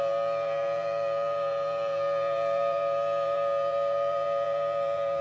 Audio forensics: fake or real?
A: fake